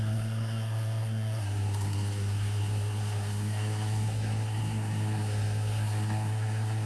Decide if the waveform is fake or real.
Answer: fake